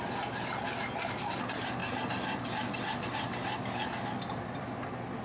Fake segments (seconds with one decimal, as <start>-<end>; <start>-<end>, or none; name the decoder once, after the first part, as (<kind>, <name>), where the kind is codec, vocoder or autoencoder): none